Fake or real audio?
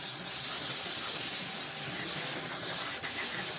real